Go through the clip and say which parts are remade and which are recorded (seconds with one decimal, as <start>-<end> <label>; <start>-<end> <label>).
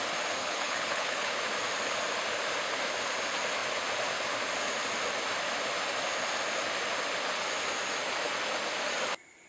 0.0-0.4 recorded; 0.4-1.4 remade; 1.4-9.5 recorded